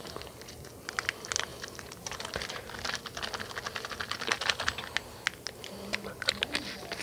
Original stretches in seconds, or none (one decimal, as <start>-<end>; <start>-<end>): 0.0-1.5; 2.2-7.0

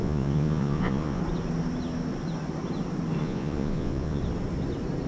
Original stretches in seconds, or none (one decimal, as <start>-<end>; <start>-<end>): 1.2-3.2; 4.2-5.1

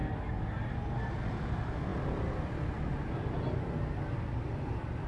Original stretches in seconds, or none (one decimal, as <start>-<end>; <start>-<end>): 0.0-5.1

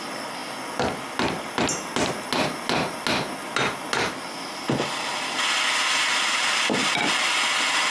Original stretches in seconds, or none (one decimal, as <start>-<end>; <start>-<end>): 0.0-7.9

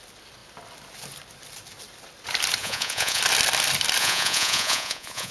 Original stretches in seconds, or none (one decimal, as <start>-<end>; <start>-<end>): 0.0-2.6; 3.2-4.0

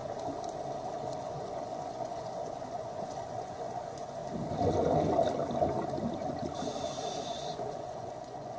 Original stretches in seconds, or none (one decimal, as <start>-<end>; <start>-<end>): 0.0-1.2; 4.2-7.2

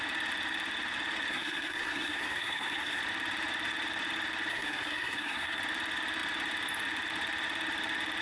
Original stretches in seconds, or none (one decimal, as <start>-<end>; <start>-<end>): 0.0-1.3; 3.0-4.5; 5.6-8.2